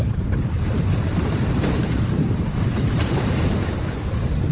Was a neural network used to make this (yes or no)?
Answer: yes